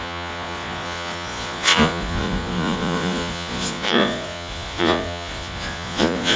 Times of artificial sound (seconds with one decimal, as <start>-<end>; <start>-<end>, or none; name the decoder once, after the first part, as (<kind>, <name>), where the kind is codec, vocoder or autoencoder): 0.0-6.4 (vocoder, Vocos)